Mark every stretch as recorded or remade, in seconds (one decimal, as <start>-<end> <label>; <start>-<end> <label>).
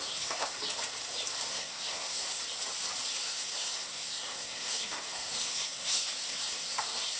0.0-0.6 remade; 0.6-1.5 recorded; 1.5-2.4 remade; 2.4-3.2 recorded; 3.2-7.2 remade